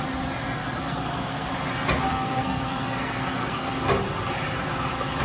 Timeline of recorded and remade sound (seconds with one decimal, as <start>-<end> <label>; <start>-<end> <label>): 0.0-0.8 recorded; 0.8-1.5 remade; 1.5-2.1 recorded; 2.1-3.7 remade; 3.7-5.2 recorded

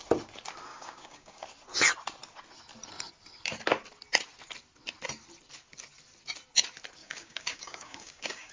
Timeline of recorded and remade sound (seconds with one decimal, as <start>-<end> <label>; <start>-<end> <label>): 0.0-0.7 recorded; 0.7-1.4 remade; 1.4-7.0 recorded; 7.0-8.5 remade

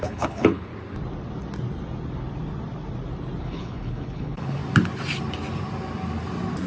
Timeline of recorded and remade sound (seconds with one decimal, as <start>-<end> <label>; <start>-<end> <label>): 0.0-0.7 remade; 0.7-3.4 recorded; 3.4-4.6 remade; 4.6-6.7 recorded

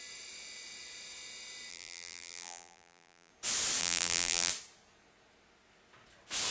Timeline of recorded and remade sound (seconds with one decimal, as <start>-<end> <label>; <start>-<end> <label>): 0.0-1.7 recorded; 1.7-3.3 remade; 3.3-3.8 recorded; 3.8-4.5 remade; 4.5-6.5 recorded

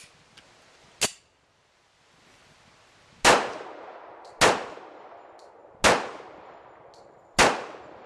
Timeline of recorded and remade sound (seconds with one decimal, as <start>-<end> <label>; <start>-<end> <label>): 0.0-8.1 recorded